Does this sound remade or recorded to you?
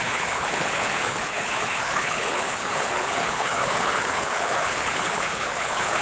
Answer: remade